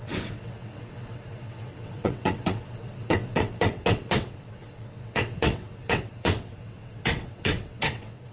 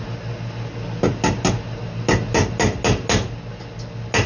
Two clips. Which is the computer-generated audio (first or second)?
first